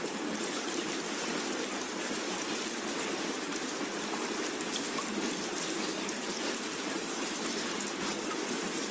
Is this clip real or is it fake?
real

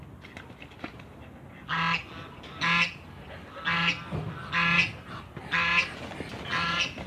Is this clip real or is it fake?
real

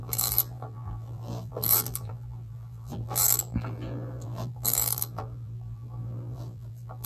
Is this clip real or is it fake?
fake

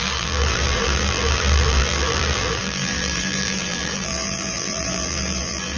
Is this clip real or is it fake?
fake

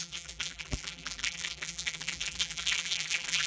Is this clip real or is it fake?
fake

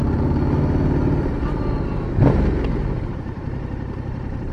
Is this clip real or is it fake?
real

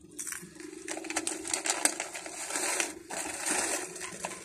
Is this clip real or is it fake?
real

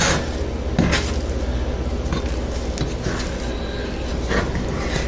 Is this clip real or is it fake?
real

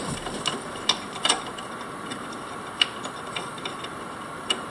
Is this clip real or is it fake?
real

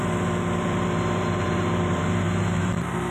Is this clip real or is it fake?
fake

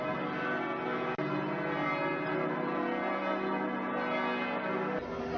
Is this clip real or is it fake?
real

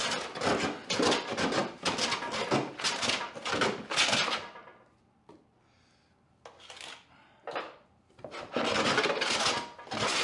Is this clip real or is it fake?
real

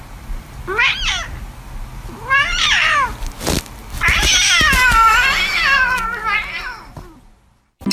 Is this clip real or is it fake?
real